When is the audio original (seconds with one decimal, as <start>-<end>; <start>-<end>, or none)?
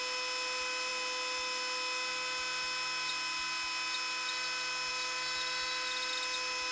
0.0-6.7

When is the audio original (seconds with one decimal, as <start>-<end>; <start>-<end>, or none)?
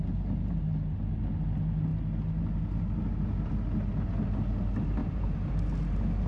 0.0-5.0; 5.5-6.3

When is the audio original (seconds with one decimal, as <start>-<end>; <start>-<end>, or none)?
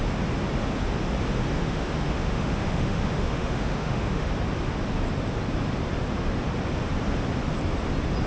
0.0-1.6; 4.3-8.3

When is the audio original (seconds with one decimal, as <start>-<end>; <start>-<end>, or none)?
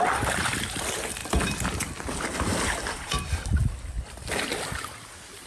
0.0-5.5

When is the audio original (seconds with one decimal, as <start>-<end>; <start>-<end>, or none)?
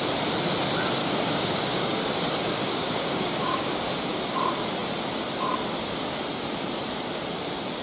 0.0-1.0; 2.0-2.6; 3.9-7.8